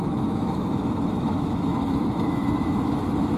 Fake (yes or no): yes